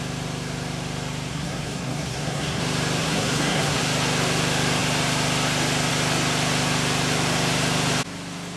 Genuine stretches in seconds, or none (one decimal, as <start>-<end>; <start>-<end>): 0.0-1.3; 2.6-3.0; 3.8-8.6